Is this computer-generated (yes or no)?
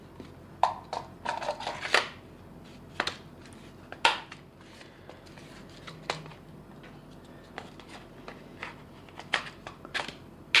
no